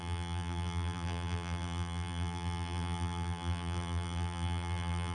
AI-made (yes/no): yes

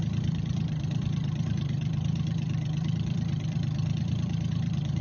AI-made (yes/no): yes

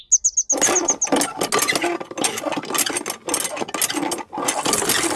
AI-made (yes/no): no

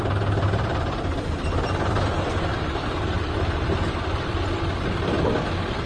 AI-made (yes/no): yes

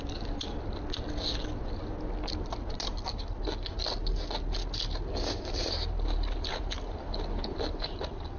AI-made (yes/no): no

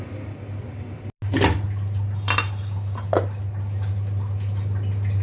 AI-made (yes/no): no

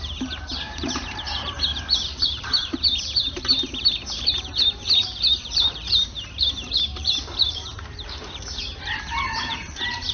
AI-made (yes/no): yes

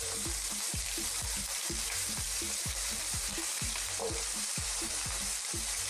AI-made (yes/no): yes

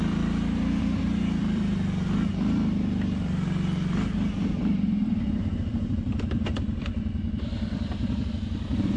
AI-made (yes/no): yes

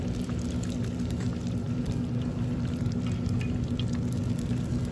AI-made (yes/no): no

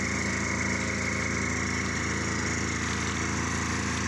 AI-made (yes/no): no